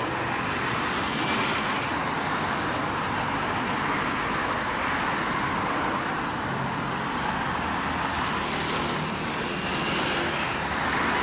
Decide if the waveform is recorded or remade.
recorded